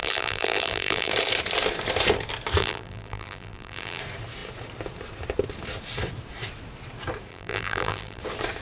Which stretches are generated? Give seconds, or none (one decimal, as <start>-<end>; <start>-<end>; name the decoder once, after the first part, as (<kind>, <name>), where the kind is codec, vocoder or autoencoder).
0.0-1.1 (vocoder, BigVGAN v2); 2.6-4.0; 7.3-8.2